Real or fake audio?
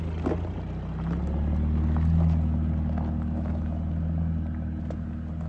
real